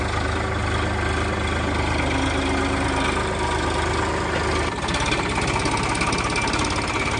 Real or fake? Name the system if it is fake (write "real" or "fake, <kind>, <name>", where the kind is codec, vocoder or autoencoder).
real